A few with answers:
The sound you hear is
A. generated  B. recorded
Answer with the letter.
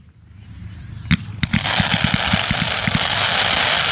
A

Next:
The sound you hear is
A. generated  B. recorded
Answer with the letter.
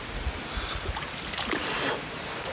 B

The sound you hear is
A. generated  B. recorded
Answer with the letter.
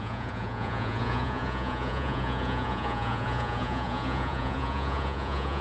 A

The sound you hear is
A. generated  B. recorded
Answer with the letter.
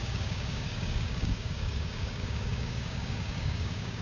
A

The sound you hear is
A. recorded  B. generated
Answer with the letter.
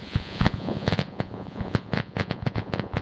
B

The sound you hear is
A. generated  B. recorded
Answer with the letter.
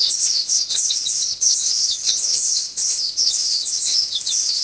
A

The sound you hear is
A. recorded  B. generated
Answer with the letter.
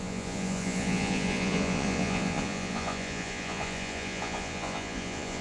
B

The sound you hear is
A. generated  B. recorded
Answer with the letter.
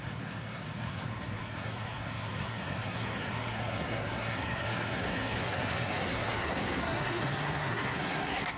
A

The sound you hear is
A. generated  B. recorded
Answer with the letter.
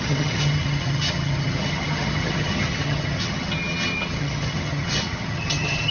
A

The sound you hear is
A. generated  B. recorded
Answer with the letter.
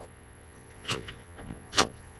A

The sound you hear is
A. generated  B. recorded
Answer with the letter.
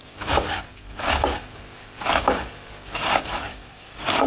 A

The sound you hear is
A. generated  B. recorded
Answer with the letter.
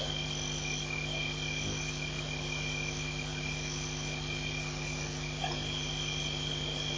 B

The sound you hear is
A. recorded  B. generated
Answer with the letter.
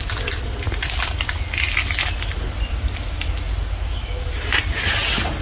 A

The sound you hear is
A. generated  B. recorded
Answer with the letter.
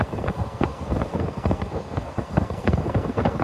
A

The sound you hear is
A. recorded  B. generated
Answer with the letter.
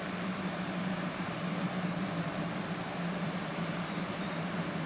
B